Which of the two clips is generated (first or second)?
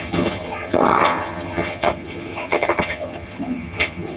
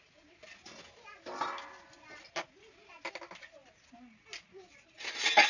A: first